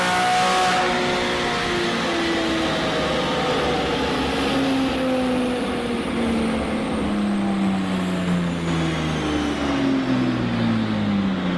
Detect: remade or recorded recorded